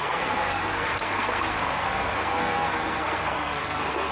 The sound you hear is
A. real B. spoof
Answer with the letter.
B